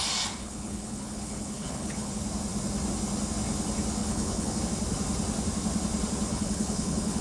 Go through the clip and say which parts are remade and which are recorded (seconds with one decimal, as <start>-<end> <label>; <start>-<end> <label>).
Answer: 0.0-0.4 recorded; 0.4-2.1 remade; 2.1-4.0 recorded; 4.0-4.6 remade; 4.6-6.3 recorded; 6.3-7.2 remade